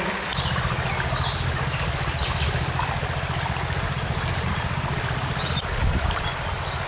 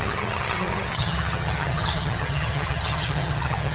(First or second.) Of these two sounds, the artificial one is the second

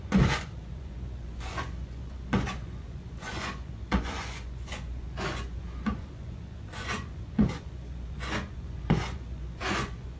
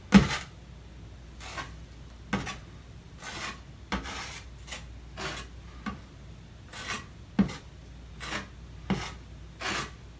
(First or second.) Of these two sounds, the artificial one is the first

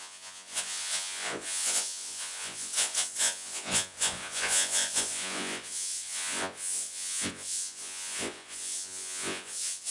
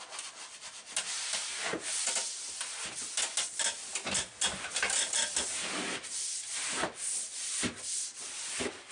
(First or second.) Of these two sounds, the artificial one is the first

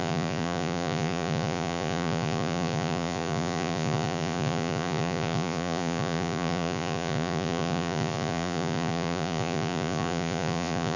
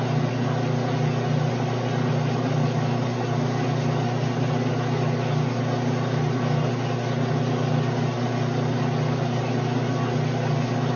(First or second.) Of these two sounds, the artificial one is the first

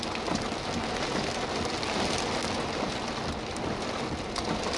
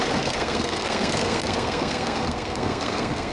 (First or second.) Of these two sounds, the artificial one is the second